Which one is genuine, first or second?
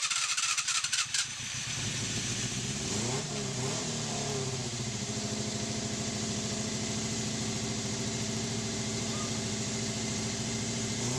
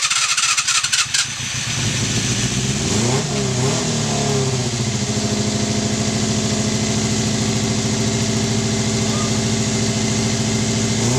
second